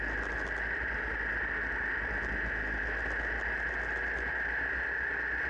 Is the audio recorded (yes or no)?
yes